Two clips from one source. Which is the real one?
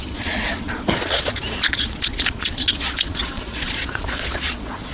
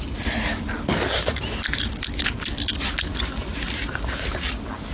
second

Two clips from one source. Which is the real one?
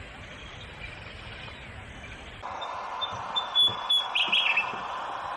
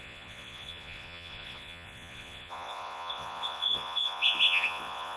first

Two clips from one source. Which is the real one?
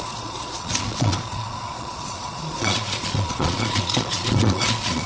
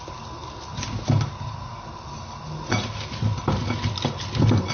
second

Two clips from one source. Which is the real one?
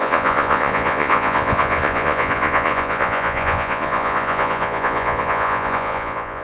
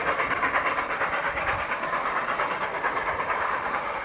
second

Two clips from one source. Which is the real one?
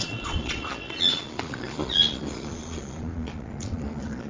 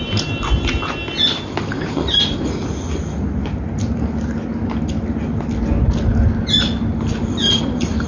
second